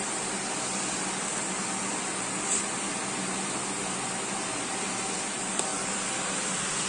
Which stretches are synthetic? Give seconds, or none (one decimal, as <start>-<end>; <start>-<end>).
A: none